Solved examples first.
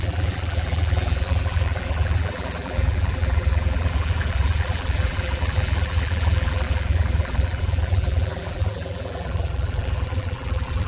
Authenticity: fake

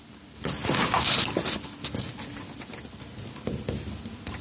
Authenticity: real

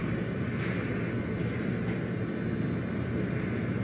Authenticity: real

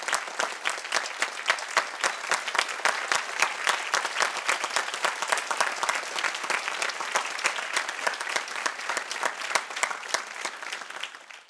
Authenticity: real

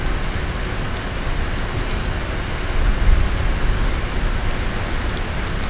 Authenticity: real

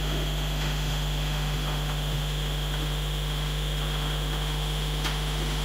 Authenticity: fake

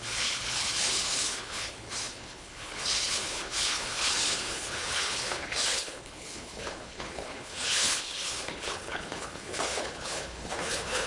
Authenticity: fake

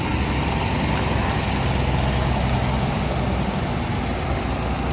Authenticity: real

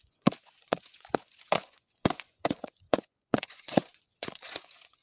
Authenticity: fake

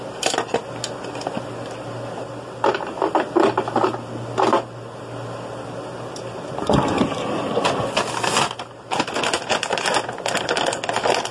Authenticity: real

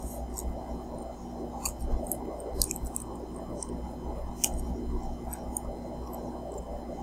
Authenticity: real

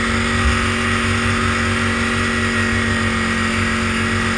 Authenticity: real